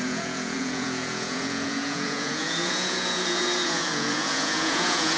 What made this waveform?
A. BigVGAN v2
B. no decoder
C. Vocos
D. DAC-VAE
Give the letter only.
C